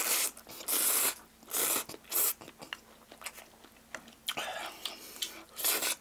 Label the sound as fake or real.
real